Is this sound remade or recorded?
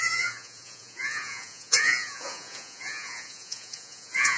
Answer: remade